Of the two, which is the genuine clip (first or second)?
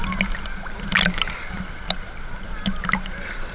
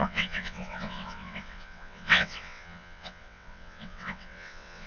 first